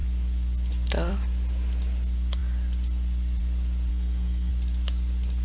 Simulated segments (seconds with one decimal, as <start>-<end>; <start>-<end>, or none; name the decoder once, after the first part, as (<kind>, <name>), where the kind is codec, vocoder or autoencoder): 3.9-4.5 (codec, SNAC)